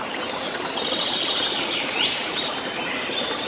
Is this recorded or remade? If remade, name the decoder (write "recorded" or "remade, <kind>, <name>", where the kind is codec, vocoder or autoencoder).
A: remade, vocoder, BigVGAN v2